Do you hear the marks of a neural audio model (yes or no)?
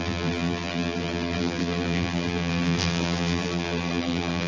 yes